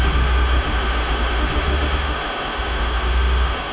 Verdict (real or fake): fake